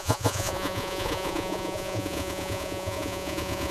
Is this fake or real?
fake